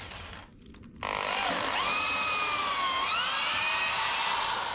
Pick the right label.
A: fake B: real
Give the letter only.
B